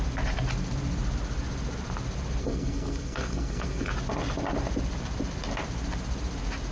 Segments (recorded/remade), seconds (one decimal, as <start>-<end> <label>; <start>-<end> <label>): 0.0-2.4 recorded; 2.4-3.9 remade; 3.9-6.7 recorded